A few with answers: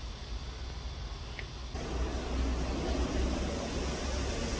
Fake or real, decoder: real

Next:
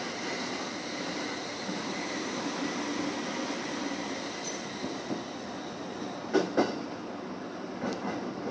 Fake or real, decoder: real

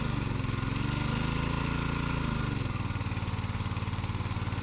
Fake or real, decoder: real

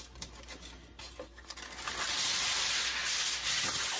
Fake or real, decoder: real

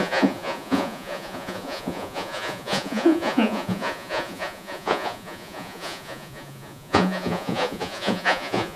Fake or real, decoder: fake, vocoder, Vocos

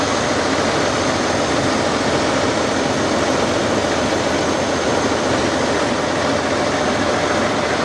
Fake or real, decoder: fake, vocoder, BigVGAN v2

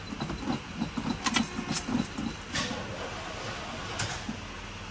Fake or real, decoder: real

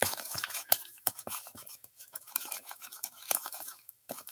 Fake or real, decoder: fake, autoencoder, DAC-VAE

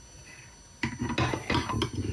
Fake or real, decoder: real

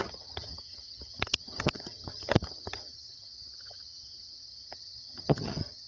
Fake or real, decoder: fake, vocoder, HiFi-GAN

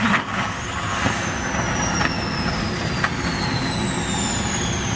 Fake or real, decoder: real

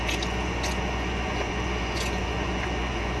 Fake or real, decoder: fake, vocoder, Vocos